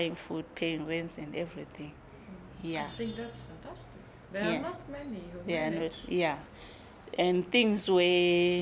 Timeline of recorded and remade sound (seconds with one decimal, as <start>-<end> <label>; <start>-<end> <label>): 0.0-8.6 recorded